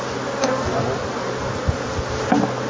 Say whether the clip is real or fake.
real